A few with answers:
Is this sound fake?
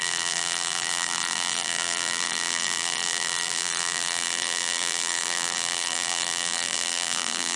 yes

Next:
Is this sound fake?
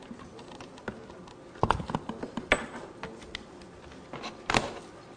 no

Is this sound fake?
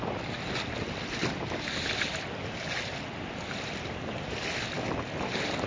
no